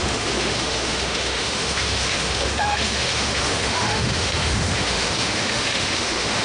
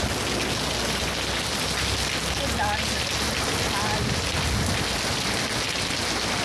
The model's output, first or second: first